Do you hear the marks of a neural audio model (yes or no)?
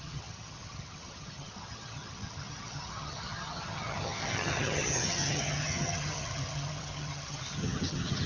yes